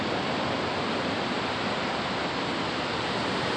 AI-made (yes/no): no